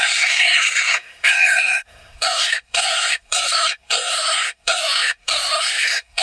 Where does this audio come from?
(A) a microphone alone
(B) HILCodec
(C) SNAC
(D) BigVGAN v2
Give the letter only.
C